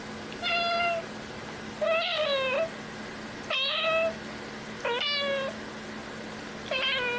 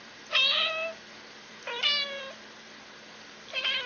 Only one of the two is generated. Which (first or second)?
second